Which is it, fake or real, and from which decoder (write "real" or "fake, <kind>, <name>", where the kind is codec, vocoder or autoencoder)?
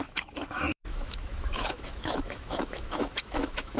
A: fake, autoencoder, DAC-VAE